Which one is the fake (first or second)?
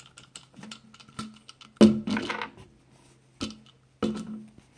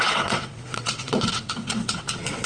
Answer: second